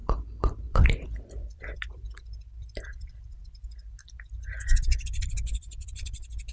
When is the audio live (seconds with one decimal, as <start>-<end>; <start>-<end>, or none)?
3.4-6.5